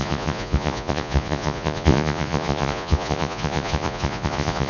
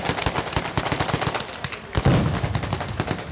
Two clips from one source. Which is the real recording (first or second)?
second